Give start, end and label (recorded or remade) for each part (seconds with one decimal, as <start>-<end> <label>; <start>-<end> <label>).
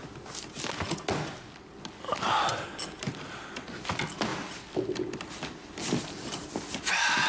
0.0-7.3 recorded